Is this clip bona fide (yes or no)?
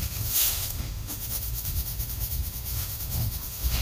no